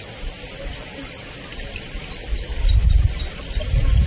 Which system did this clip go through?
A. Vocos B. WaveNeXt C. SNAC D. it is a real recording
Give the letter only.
D